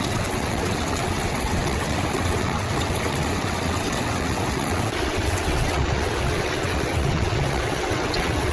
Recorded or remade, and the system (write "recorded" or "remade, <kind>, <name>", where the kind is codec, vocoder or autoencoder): remade, vocoder, WaveNeXt